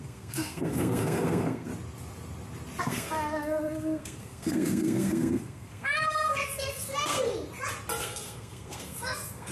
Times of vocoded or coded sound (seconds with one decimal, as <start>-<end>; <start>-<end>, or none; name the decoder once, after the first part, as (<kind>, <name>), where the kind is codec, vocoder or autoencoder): 0.0-1.7 (codec, SNAC); 2.8-7.3; 8.0-9.5